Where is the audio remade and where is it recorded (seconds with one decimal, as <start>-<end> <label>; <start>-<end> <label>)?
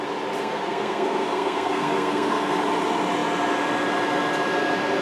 0.0-0.4 recorded; 0.4-2.6 remade; 2.6-5.0 recorded